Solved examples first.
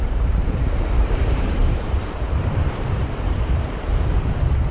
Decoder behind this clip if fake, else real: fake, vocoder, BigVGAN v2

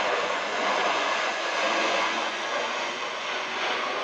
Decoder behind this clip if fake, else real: fake, vocoder, Vocos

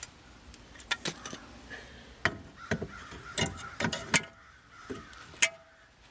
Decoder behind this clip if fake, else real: real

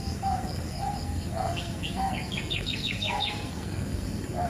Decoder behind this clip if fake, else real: fake, codec, SNAC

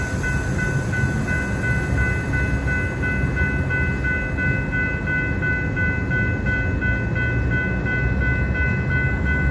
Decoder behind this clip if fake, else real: real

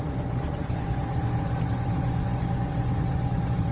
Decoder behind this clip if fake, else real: fake, vocoder, Vocos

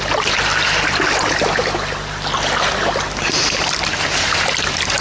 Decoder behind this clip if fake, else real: real